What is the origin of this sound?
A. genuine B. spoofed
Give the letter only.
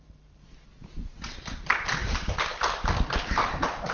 B